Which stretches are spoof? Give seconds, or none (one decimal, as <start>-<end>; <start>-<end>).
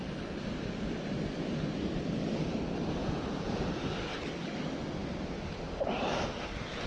3.0-3.7